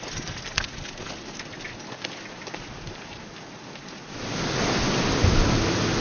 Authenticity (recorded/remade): recorded